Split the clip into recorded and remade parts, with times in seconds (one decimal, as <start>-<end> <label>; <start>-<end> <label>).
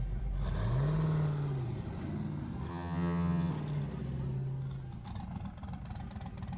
0.0-2.7 recorded; 2.7-3.5 remade; 3.5-6.6 recorded